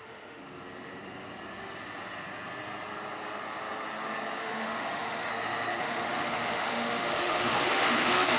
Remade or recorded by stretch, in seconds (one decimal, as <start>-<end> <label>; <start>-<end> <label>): 0.0-0.4 remade; 0.4-4.4 recorded; 4.4-5.3 remade; 5.3-5.8 recorded; 5.8-8.4 remade